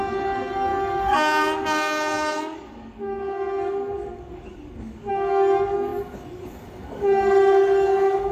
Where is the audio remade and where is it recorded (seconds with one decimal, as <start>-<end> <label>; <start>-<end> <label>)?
0.0-8.3 remade